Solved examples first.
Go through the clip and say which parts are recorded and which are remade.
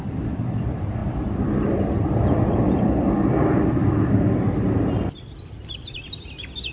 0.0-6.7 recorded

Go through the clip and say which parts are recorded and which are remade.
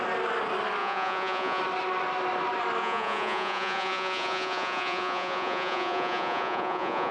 0.0-0.8 recorded; 0.8-1.6 remade; 1.6-2.8 recorded; 2.8-7.1 remade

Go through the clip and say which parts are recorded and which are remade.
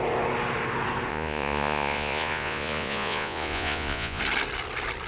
0.0-1.1 recorded; 1.1-4.2 remade; 4.2-5.1 recorded